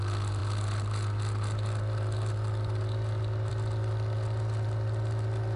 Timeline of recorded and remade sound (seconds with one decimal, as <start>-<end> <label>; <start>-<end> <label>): 0.0-5.6 recorded